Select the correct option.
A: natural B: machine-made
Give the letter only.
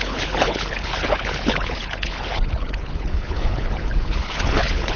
B